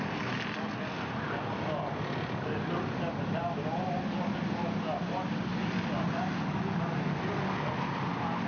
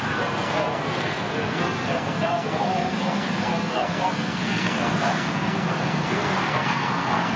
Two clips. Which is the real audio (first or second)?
first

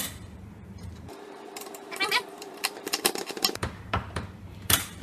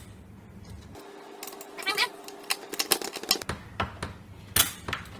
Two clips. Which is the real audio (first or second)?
second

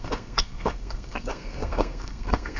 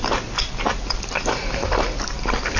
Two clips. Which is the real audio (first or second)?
second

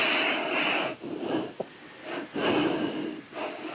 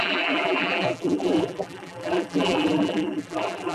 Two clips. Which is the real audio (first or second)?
first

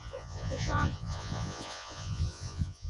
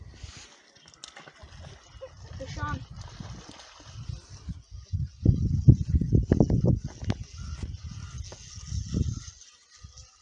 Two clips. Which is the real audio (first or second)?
second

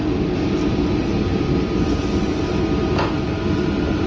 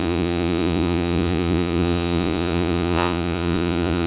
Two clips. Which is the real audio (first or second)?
first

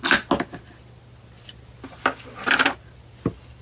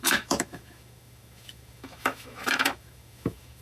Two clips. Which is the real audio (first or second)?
first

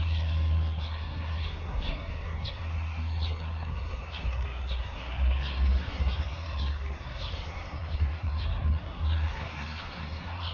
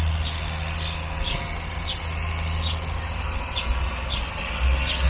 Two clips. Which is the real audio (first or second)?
second